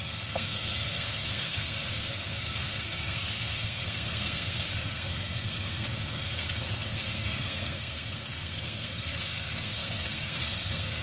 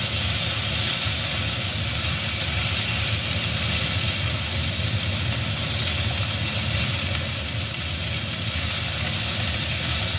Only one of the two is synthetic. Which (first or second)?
first